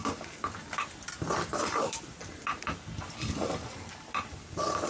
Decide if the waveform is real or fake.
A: real